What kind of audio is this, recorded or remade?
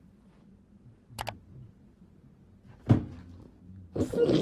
recorded